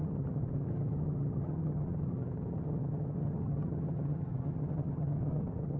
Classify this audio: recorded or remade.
remade